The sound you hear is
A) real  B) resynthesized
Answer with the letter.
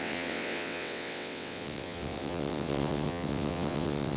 B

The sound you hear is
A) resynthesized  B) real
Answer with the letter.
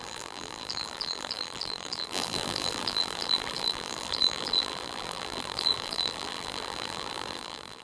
A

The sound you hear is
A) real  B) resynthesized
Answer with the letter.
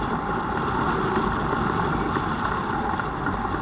A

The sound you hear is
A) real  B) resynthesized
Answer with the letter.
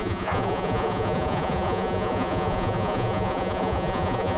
B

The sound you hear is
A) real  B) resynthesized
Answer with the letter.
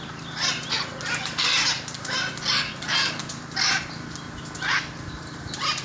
A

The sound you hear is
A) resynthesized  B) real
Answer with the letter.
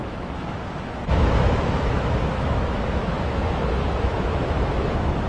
A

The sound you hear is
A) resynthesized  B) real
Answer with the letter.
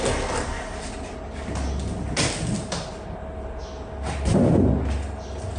B